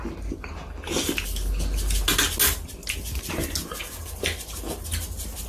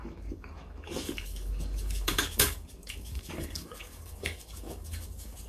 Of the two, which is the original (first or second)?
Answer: first